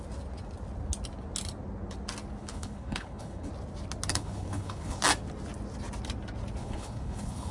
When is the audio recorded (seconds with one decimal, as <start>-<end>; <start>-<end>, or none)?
0.0-2.4; 3.5-4.1; 5.0-6.6